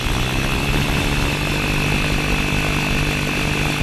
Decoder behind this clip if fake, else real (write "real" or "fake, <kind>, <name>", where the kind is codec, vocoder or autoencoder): real